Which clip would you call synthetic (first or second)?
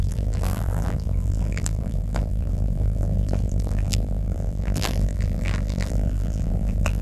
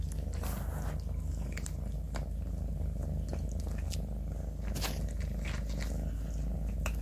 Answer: first